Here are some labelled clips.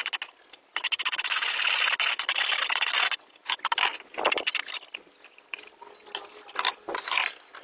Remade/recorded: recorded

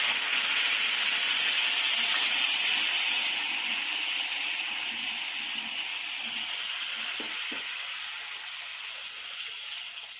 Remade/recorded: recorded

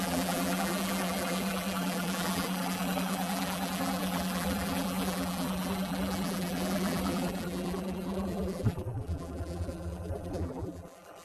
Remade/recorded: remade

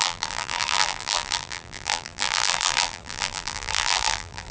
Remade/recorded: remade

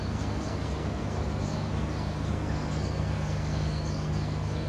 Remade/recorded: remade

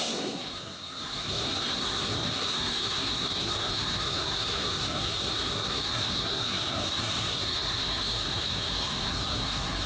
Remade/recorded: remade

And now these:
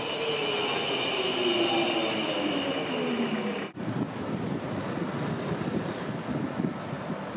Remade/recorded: recorded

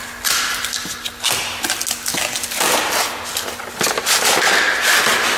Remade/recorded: recorded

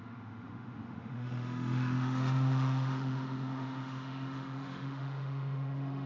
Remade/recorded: remade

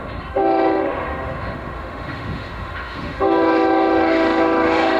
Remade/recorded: remade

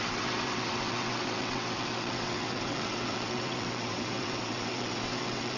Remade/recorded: remade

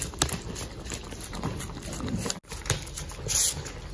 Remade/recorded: recorded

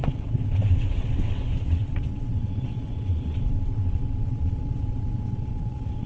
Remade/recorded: remade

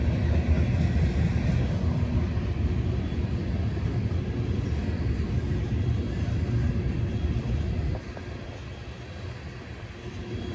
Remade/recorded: recorded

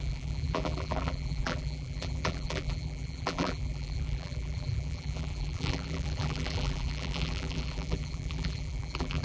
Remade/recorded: remade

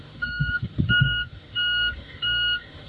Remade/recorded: remade